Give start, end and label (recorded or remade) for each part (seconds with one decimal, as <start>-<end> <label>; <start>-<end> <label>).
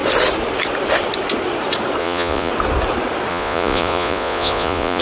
0.0-2.0 recorded; 2.0-2.5 remade; 2.5-3.3 recorded; 3.3-5.0 remade